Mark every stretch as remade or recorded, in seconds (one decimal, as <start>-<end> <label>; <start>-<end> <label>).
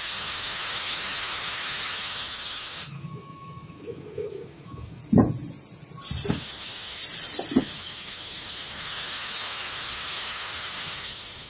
0.0-5.0 remade; 5.0-6.3 recorded; 6.3-7.0 remade; 7.0-7.6 recorded; 7.6-11.5 remade